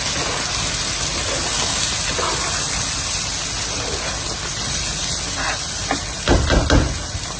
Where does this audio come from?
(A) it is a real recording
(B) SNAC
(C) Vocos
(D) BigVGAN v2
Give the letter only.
A